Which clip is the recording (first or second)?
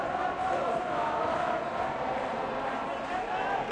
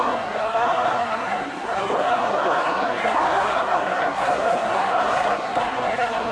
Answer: first